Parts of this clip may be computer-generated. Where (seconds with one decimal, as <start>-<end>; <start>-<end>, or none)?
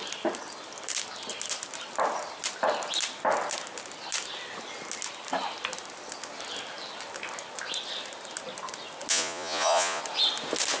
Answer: 9.1-10.0